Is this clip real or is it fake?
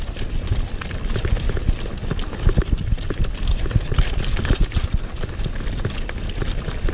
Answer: real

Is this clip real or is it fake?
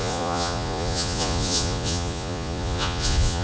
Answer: fake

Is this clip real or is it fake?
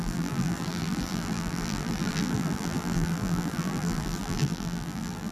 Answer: fake